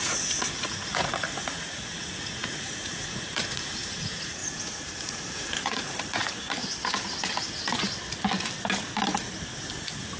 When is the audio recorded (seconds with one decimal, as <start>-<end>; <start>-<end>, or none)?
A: 6.6-10.2

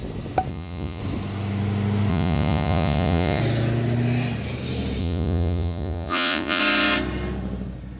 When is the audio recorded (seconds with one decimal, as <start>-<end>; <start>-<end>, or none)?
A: 0.0-0.5; 1.0-2.1; 3.4-5.0; 6.6-8.0

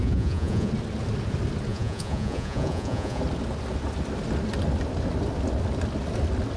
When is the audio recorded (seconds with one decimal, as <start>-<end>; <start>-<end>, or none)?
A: 0.7-1.7; 3.2-6.6

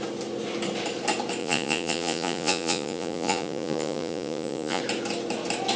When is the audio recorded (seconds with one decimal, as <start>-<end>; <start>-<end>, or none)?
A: 0.0-1.4; 4.8-5.8

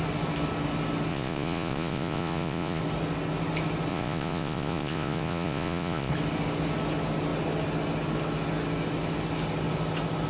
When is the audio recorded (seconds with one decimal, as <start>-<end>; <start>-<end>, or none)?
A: 0.0-1.1; 2.8-3.9; 6.1-10.3

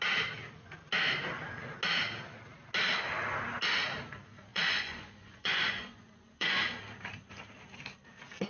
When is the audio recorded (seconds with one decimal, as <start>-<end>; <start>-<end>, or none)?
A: 0.0-4.5; 6.7-8.5